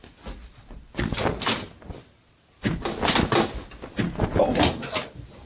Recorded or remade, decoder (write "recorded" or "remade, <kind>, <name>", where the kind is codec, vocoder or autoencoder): recorded